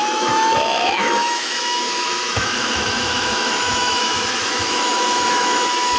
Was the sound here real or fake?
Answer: fake